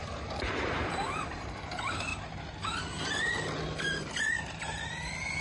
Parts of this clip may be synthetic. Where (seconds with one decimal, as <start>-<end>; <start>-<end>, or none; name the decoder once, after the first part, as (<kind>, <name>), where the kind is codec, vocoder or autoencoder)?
0.0-2.1 (vocoder, BigVGAN v2); 4.1-5.4